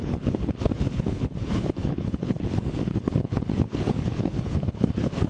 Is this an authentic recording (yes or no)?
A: no